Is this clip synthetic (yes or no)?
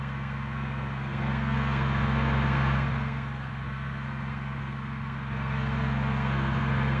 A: yes